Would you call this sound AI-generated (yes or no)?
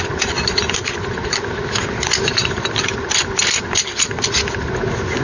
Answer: no